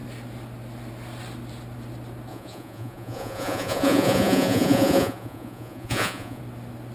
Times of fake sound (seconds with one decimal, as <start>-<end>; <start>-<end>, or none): 2.3-6.4